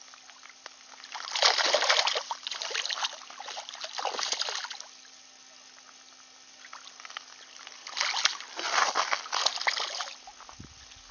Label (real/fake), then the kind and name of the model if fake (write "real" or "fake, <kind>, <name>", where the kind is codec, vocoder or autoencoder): real